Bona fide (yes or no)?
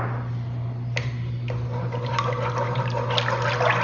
yes